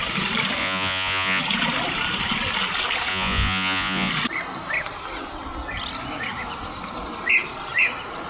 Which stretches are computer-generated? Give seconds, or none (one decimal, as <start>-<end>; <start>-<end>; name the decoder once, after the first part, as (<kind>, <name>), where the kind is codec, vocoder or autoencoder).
0.6-1.4 (vocoder, Vocos); 3.1-4.1